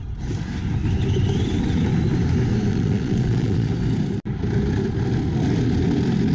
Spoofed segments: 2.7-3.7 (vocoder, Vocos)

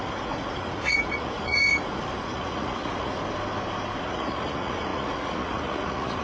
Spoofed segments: 0.0-3.2 (vocoder, Vocos); 4.0-6.2

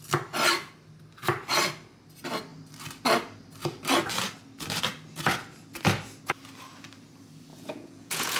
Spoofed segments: 7.5-8.4 (vocoder, Vocos)

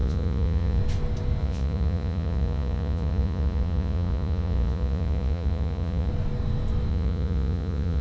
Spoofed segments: 0.0-0.8 (vocoder, Vocos); 1.4-6.1; 6.9-8.0

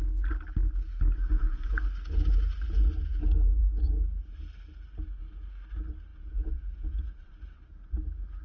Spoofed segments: 6.1-7.2 (vocoder, Vocos)